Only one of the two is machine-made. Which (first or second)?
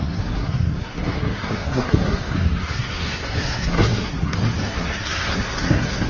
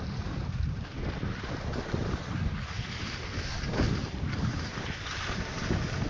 first